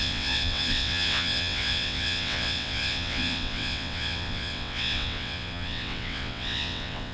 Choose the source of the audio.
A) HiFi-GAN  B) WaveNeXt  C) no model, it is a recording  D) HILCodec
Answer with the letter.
B